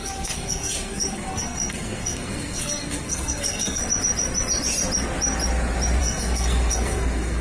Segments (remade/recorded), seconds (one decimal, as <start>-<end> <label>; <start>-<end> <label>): 0.0-3.8 remade; 3.8-6.0 recorded; 6.0-7.4 remade